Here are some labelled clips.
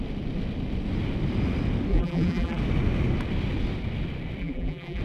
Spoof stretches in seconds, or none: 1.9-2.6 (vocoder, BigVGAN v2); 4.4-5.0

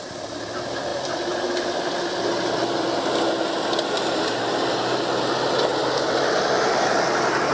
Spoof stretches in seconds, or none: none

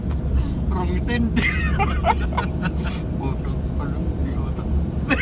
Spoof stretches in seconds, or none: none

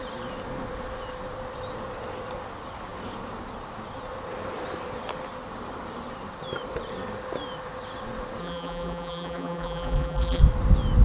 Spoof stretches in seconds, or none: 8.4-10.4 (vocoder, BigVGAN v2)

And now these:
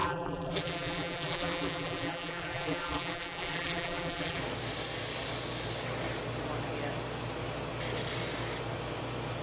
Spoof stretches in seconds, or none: 0.0-4.4 (vocoder, BigVGAN v2)